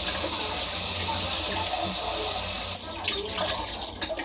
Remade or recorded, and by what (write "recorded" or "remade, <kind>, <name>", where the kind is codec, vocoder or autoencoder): recorded